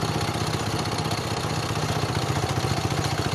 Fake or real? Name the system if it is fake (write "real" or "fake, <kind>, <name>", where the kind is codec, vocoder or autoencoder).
real